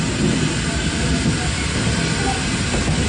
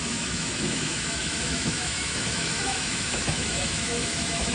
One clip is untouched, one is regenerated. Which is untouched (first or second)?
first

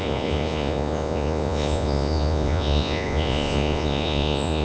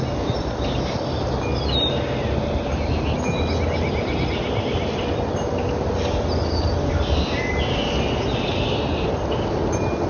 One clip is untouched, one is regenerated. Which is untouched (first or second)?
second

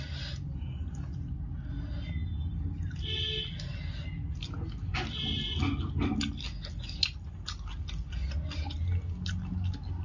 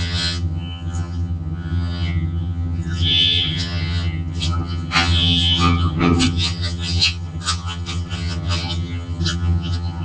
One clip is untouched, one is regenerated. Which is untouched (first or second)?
first